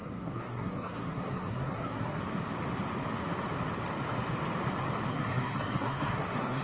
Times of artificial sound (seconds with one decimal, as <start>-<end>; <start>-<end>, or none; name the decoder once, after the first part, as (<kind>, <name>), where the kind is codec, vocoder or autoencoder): 0.0-2.2 (codec, SNAC); 5.1-6.6